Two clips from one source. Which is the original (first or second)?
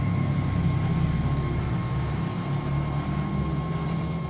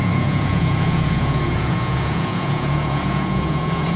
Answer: first